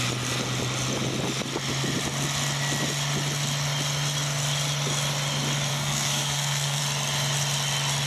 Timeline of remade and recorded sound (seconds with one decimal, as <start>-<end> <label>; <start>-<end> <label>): 0.0-5.7 recorded; 5.7-6.8 remade; 6.8-8.1 recorded